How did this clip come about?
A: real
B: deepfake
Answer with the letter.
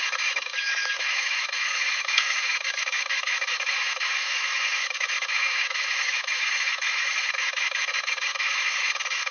B